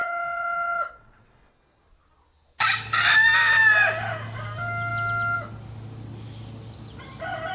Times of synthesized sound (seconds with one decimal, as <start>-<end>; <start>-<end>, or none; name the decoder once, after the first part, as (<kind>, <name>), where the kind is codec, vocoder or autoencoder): 0.0-1.5 (vocoder, WaveNeXt)

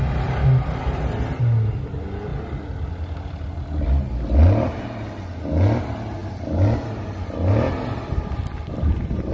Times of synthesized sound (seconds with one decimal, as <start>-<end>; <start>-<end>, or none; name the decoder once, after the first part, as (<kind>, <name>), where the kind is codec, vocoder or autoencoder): none

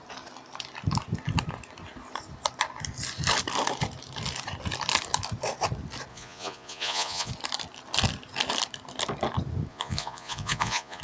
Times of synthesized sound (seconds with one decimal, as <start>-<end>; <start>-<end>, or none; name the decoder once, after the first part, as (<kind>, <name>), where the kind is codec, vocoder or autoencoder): 6.1-7.3 (vocoder, Vocos); 9.7-11.0

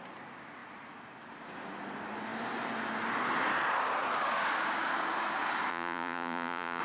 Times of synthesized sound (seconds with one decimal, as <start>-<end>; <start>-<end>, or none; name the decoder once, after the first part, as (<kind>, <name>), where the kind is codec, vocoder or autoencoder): 5.7-6.8 (vocoder, Vocos)

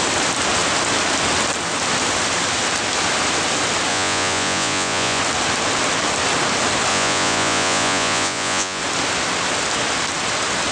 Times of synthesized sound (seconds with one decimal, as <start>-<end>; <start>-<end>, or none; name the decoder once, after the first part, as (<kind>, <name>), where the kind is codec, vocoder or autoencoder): 3.9-5.2 (vocoder, Vocos); 6.9-8.8

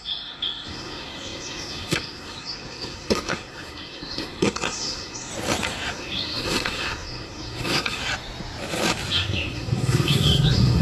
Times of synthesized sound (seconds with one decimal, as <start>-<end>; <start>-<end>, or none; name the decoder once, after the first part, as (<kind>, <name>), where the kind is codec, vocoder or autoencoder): 0.0-5.3 (codec, SNAC); 5.9-8.0; 9.1-10.8